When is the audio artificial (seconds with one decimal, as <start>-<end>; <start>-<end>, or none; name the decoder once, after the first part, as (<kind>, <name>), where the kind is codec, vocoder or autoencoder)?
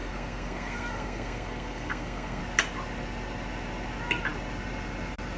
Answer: 0.0-2.4 (codec, SNAC)